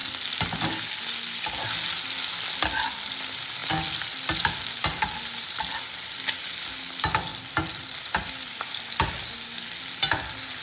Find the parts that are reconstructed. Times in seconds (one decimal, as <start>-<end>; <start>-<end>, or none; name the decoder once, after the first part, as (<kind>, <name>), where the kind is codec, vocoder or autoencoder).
none